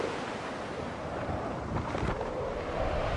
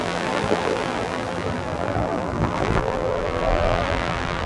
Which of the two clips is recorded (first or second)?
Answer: first